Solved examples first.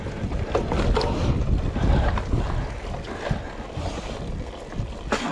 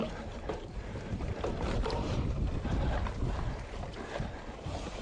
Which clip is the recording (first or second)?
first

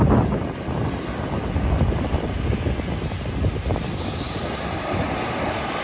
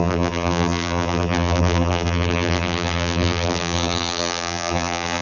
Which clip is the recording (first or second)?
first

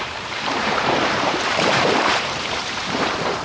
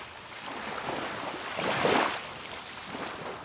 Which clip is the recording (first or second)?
second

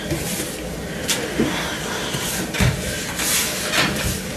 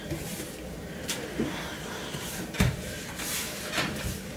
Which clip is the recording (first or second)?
first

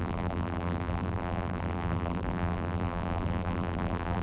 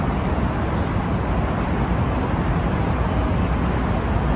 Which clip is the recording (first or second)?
second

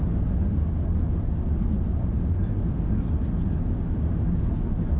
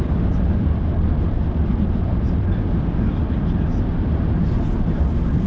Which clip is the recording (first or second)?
first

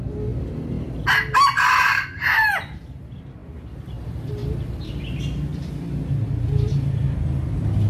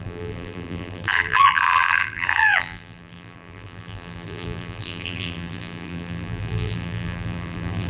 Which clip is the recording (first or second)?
first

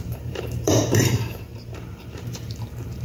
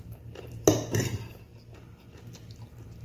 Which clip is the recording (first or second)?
second